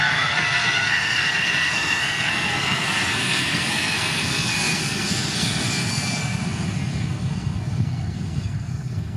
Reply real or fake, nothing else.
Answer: fake